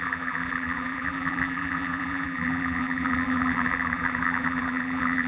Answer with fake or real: fake